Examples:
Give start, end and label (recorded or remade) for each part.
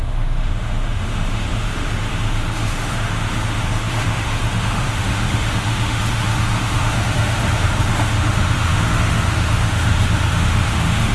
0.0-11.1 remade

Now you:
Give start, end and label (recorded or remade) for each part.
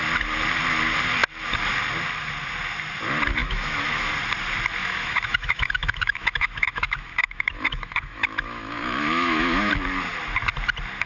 0.0-3.4 recorded; 3.4-4.1 remade; 4.1-4.8 recorded; 4.8-9.7 remade; 9.7-11.1 recorded